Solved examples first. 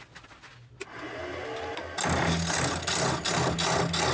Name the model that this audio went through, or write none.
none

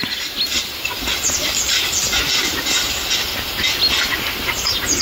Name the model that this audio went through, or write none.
none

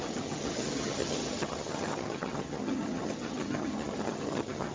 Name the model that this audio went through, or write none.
vocoder, HiFi-GAN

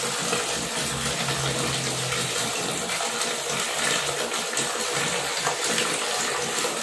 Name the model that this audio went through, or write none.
none